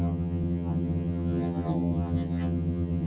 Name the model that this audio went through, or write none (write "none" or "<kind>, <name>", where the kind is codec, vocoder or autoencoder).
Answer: vocoder, HiFi-GAN